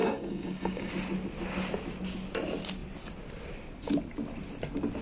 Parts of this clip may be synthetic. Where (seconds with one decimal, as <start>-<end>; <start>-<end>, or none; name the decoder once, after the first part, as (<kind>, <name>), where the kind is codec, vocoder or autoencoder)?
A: 0.0-0.9 (codec, DAC)